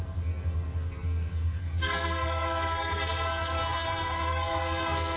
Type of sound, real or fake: fake